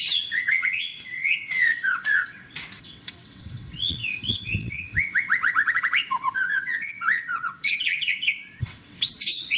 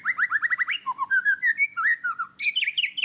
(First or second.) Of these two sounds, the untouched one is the second